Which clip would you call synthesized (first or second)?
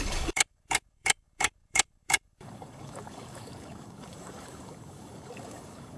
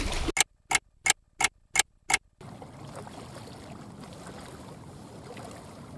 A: first